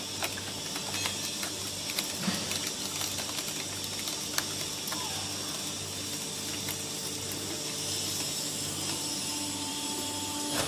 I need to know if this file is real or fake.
real